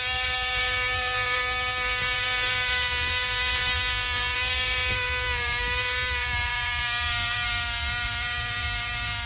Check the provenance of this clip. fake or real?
fake